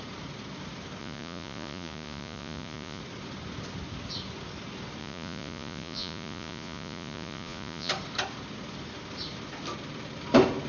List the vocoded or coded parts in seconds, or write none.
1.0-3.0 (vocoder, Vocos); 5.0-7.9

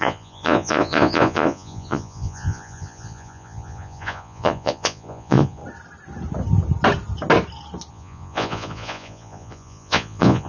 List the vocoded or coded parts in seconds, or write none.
0.0-5.6 (vocoder, Vocos); 7.9-10.5

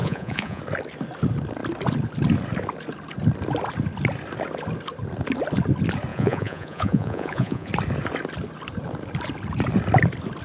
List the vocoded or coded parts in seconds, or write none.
0.0-0.6 (vocoder, Vocos); 6.1-7.7

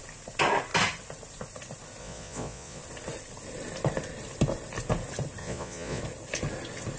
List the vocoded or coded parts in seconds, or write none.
2.0-2.8 (vocoder, Vocos); 5.4-6.0

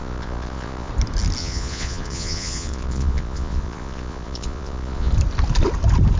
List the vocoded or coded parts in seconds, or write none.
0.0-0.9 (vocoder, Vocos); 1.4-5.1

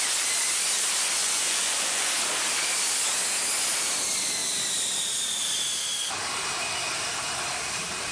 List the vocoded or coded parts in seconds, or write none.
1.2-2.1 (vocoder, Vocos)

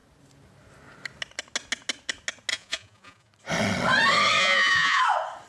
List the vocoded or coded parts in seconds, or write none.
2.5-3.3 (vocoder, Vocos); 4.4-5.0

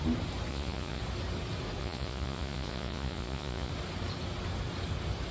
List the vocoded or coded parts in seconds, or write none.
0.5-1.0 (vocoder, Vocos); 1.8-3.7